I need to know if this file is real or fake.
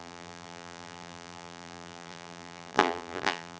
fake